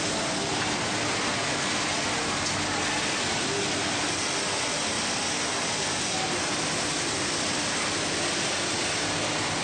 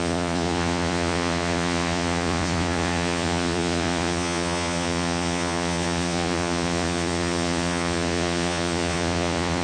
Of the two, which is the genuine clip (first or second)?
first